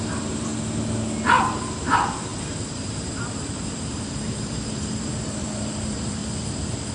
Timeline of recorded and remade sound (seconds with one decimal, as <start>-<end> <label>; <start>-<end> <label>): 0.0-0.5 remade; 0.5-1.4 recorded; 1.4-6.2 remade; 6.2-6.9 recorded